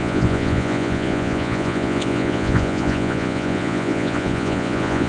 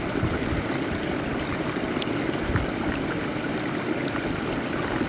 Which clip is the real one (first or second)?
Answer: second